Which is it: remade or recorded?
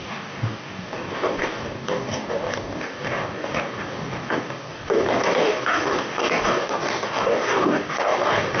remade